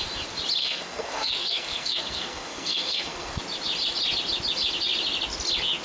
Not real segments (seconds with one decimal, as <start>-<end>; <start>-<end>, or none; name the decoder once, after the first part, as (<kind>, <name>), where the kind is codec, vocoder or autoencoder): 0.6-3.4 (codec, SNAC)